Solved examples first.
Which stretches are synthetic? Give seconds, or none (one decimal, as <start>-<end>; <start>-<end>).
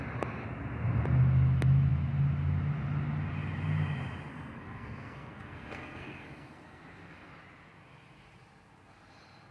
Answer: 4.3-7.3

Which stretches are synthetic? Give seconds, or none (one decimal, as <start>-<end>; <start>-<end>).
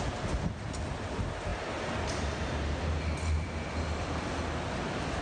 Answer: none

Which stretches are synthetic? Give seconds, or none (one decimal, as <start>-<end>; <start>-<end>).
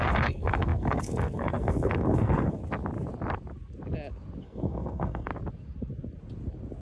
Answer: 0.0-2.6; 4.4-5.3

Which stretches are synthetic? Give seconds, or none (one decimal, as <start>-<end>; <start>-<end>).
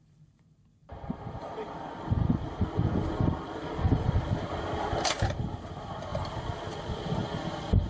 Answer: 0.8-1.7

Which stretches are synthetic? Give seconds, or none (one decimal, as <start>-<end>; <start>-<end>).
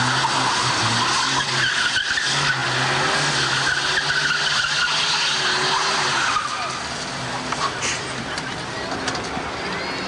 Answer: none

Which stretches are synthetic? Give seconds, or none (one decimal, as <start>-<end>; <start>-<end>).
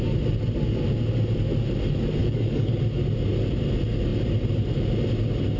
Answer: 2.2-2.8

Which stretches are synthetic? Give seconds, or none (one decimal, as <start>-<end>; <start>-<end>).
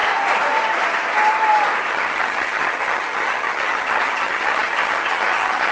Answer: 1.9-5.7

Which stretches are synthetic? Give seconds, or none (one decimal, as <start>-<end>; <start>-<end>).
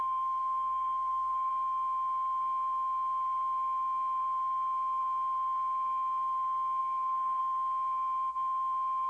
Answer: 0.0-1.5; 6.8-7.4